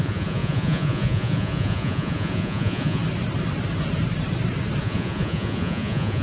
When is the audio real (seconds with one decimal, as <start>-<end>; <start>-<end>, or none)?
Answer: 3.0-4.8